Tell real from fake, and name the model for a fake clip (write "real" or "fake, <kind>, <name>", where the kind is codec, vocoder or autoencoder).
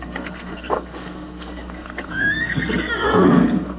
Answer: fake, codec, SNAC